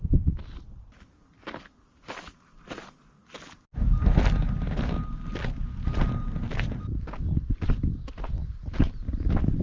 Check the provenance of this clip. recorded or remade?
remade